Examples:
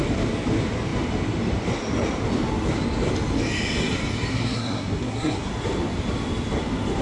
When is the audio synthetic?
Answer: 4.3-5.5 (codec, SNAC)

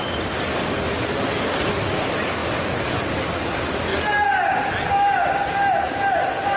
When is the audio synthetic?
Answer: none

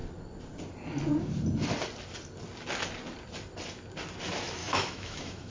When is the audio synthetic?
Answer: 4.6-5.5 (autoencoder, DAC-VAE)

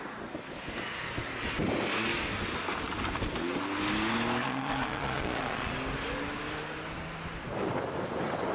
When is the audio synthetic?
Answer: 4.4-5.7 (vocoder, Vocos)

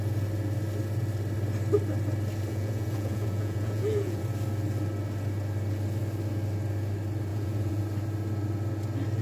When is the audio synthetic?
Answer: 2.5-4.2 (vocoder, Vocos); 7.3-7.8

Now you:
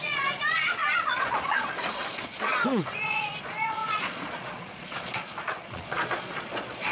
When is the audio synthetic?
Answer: 0.0-6.9 (vocoder, Vocos)